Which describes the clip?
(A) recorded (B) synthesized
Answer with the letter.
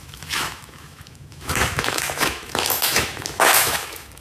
B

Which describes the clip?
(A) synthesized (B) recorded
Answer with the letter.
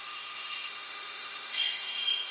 A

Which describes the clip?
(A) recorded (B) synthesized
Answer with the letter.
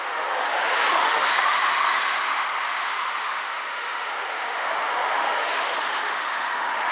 B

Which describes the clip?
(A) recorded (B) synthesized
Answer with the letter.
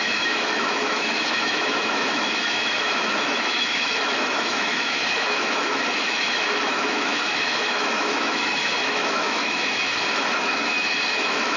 B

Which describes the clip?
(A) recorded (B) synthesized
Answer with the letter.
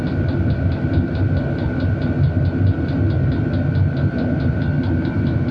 A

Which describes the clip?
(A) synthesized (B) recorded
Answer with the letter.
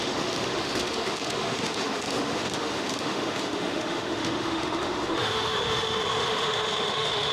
A